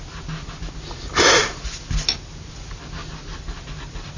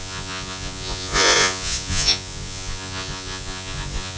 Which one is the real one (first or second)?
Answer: first